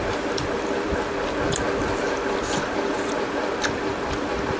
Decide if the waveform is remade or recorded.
recorded